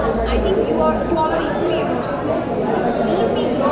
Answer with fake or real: real